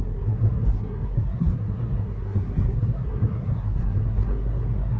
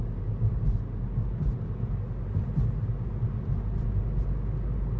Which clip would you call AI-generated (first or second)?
first